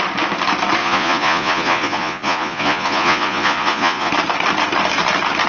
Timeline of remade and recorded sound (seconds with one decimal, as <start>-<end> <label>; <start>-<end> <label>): 0.0-0.8 recorded; 0.8-4.1 remade; 4.1-5.5 recorded